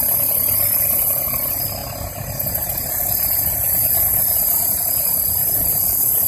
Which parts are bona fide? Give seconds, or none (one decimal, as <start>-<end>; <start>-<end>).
1.8-5.4